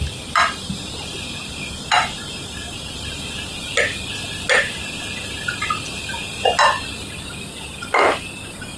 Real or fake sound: real